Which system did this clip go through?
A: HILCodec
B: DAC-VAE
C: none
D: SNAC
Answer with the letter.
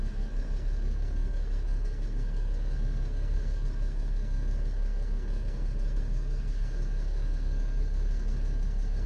D